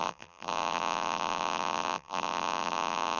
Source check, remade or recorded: remade